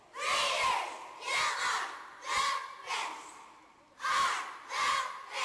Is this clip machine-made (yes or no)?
no